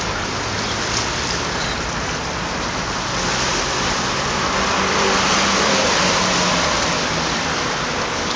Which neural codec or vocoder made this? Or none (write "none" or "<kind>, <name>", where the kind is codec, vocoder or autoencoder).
vocoder, BigVGAN v2